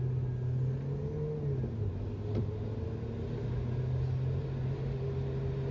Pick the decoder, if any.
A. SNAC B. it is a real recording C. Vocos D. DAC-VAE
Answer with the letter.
B